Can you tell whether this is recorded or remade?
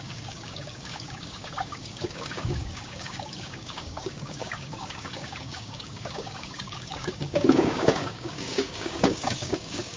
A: remade